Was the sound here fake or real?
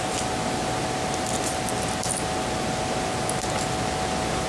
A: real